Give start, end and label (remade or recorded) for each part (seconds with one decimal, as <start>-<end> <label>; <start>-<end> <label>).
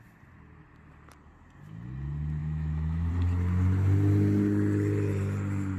0.0-2.4 recorded; 2.4-3.1 remade; 3.1-5.8 recorded